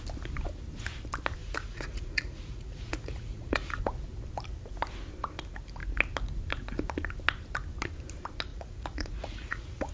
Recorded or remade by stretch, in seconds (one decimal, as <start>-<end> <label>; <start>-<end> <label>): 0.0-1.4 recorded; 1.4-3.8 remade; 3.8-8.5 recorded; 8.5-9.9 remade